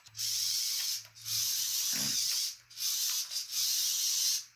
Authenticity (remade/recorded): recorded